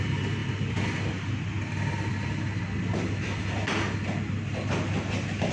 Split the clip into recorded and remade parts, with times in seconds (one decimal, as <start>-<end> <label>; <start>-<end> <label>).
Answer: 0.0-5.5 recorded